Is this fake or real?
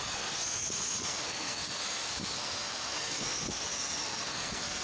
fake